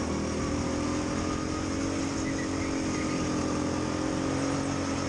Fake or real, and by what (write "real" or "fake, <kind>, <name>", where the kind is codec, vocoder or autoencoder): real